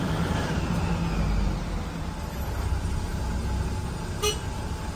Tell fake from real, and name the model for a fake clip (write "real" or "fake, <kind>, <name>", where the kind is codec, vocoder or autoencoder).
real